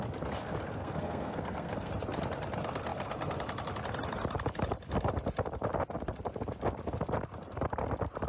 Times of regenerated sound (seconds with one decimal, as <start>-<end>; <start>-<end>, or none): 0.8-1.9